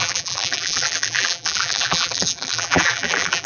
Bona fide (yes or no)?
no